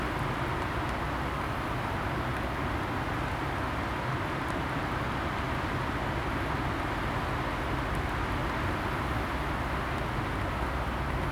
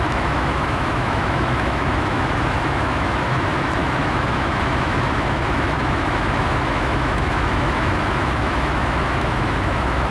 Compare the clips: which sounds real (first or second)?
first